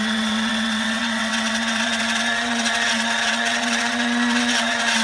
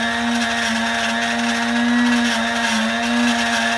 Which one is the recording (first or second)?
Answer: second